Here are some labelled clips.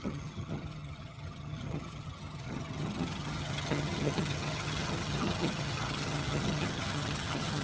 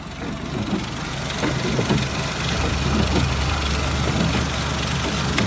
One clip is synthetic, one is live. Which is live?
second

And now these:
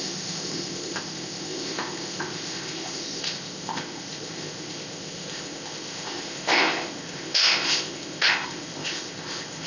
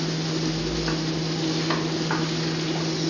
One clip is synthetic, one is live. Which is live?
second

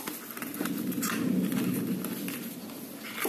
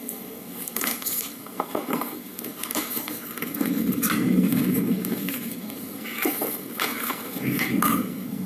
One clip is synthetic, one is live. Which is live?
first